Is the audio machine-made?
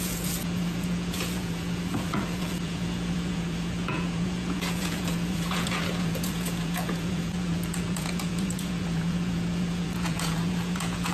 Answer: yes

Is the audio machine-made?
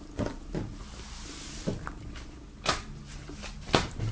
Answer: no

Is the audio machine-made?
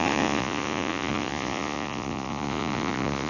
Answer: yes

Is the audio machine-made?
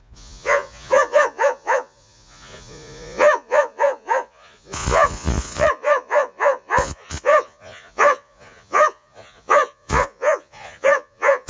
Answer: yes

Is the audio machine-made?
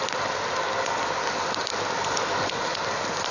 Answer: no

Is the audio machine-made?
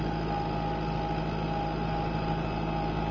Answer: no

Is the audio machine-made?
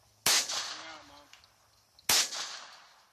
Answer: no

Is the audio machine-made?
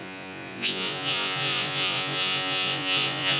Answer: yes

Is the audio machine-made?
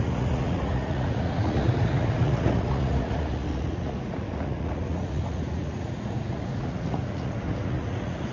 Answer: yes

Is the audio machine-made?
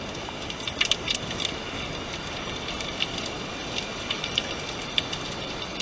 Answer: no